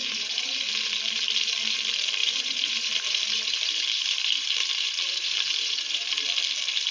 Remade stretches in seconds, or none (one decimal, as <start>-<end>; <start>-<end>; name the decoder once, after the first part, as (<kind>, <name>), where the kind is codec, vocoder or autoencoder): 0.0-0.7 (vocoder, BigVGAN v2); 2.2-6.1